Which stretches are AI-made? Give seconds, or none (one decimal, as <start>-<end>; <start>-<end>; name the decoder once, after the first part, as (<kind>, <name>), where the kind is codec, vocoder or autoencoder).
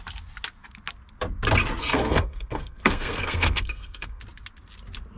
1.8-4.2 (codec, SNAC)